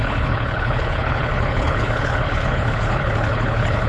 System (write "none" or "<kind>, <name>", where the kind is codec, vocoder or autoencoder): codec, HILCodec